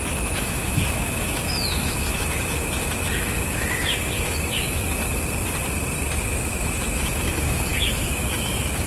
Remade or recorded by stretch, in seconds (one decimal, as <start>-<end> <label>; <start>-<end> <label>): 0.0-5.0 remade; 5.0-6.2 recorded; 6.2-8.9 remade